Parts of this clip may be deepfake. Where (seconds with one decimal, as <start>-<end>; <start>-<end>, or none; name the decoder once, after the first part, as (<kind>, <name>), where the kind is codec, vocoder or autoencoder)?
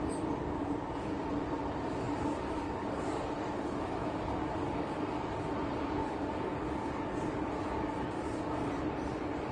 0.4-1.2 (codec, DAC); 1.9-5.4; 6.0-8.7